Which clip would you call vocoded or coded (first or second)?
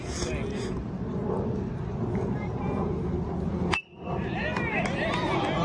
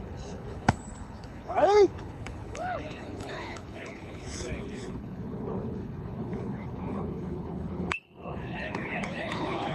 second